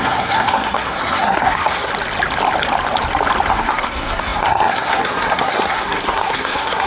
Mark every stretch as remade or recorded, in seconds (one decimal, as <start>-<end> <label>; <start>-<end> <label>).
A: 0.0-1.9 remade; 1.9-3.5 recorded; 3.5-6.9 remade